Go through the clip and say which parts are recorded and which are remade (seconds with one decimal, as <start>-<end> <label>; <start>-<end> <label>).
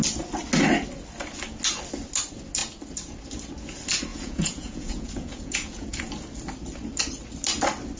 0.0-4.1 recorded; 4.1-6.0 remade; 6.0-8.0 recorded